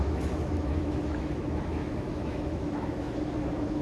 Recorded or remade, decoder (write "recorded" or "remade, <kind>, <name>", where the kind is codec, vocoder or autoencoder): remade, autoencoder, DAC-VAE